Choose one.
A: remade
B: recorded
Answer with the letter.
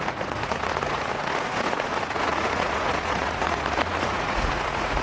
A